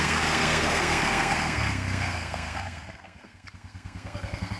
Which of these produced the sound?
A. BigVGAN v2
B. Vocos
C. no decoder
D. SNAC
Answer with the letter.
D